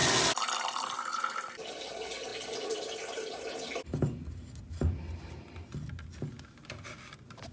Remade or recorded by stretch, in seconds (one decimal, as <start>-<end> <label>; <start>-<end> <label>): 0.0-7.5 recorded